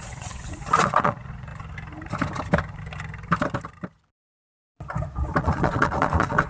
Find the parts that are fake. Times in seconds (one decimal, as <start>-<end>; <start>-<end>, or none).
0.0-1.5; 5.4-6.5